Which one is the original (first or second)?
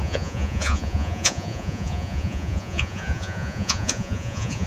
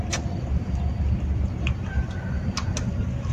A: second